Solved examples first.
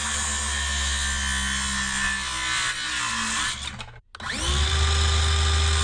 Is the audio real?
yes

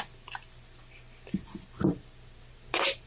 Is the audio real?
yes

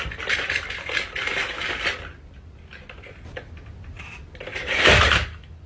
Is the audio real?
yes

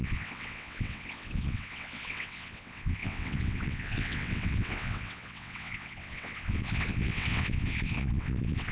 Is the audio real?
no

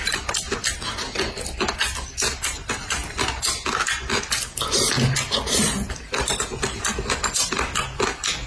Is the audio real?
yes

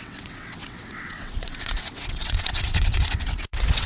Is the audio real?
no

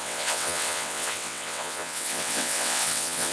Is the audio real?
no